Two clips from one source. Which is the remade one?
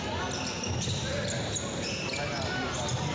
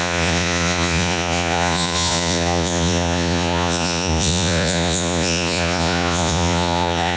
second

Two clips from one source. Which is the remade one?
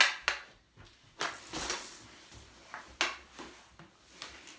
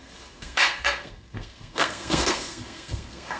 second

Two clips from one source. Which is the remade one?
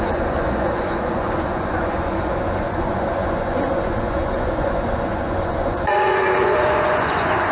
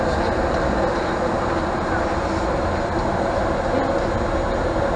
first